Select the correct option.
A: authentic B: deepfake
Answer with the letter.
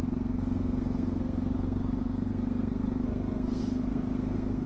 B